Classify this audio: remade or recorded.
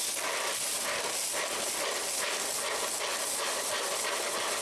recorded